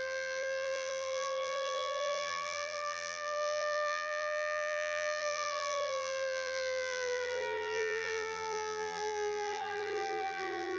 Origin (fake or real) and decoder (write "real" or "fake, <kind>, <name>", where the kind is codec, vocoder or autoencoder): fake, vocoder, BigVGAN v2